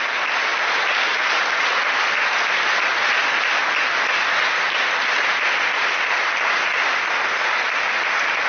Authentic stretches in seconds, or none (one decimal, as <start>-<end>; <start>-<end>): 0.0-8.5